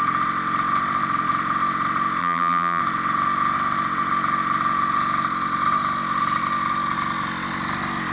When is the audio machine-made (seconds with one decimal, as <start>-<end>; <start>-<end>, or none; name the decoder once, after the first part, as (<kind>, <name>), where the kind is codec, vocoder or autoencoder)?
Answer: 2.2-2.8 (vocoder, BigVGAN v2)